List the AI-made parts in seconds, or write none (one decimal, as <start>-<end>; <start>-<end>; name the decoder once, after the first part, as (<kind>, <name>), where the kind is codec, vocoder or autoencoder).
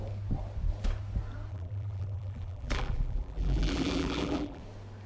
1.5-4.6 (vocoder, BigVGAN v2)